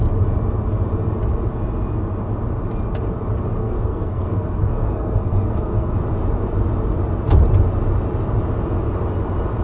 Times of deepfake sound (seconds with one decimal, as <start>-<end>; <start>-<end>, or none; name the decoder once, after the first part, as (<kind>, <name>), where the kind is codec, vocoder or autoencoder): 3.6-5.9 (codec, SNAC)